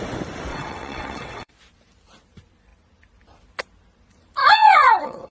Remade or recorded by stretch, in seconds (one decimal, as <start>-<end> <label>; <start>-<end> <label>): 0.0-0.5 recorded; 0.5-1.5 remade; 1.5-4.4 recorded; 4.4-5.3 remade